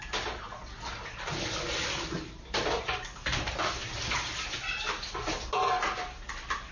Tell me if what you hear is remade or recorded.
recorded